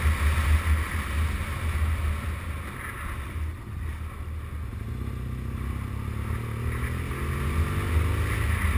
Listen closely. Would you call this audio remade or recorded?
recorded